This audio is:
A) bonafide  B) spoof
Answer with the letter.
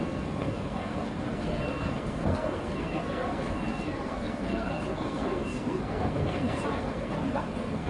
B